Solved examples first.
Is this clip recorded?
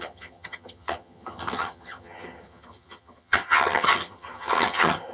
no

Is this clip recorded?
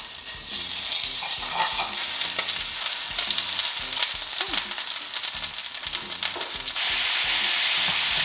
yes